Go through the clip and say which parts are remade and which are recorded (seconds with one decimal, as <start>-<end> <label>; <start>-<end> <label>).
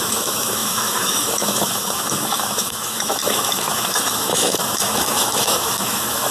0.0-6.3 remade